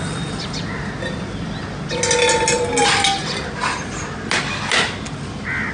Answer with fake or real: real